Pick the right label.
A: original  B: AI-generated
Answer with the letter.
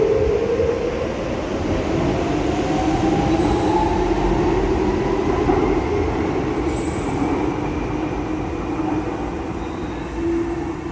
A